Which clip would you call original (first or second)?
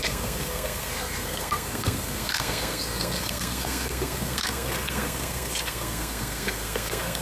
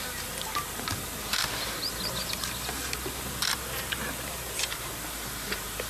second